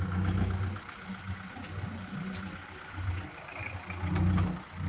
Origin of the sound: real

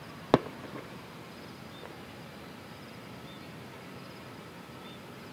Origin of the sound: real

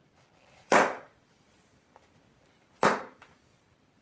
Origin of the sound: fake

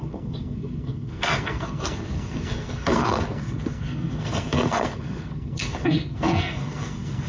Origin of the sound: fake